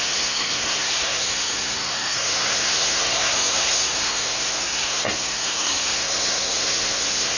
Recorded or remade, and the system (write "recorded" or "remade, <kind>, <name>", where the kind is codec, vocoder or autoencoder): remade, codec, SNAC